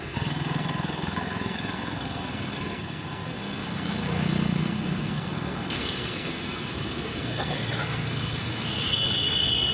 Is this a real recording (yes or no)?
no